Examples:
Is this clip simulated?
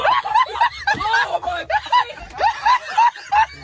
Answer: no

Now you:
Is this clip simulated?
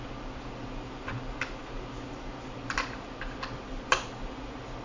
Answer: no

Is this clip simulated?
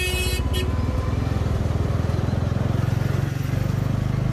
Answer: no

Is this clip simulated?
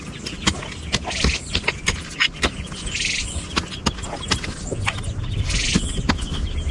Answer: no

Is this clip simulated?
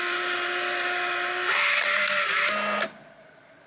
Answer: no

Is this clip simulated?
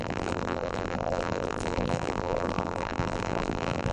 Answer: yes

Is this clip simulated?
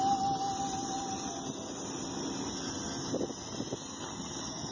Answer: no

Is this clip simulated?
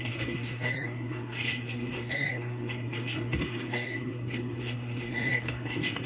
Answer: yes